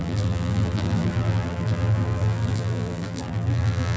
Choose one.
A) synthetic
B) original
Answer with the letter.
A